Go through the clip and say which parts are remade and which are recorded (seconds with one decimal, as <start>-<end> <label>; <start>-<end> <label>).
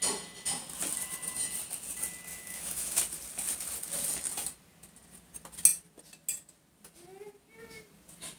0.0-2.3 recorded; 2.3-3.0 remade; 3.0-8.4 recorded